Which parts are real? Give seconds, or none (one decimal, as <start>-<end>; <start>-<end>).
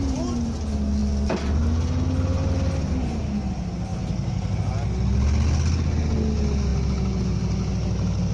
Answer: 0.0-8.3